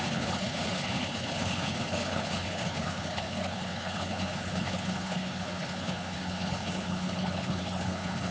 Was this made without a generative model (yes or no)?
no